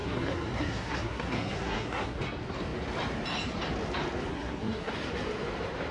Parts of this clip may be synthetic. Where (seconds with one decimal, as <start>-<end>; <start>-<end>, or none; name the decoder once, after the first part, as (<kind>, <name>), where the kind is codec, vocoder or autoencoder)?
0.0-2.2 (codec, SNAC); 4.3-4.9